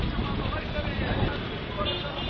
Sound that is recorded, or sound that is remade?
recorded